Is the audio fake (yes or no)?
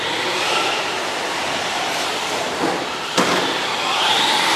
yes